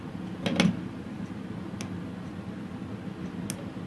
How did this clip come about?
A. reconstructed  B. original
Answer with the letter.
B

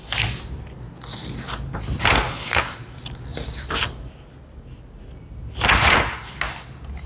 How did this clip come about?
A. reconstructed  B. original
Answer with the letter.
B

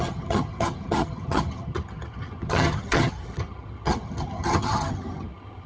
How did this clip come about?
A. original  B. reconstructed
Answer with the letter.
B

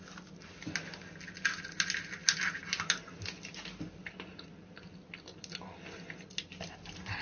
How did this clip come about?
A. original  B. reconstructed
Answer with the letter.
A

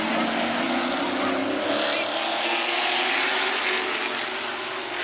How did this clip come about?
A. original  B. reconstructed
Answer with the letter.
A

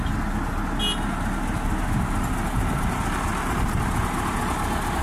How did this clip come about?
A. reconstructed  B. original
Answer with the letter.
B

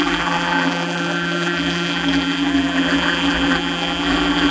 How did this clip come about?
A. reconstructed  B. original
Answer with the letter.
A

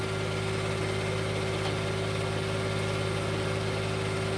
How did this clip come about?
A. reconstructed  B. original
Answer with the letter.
B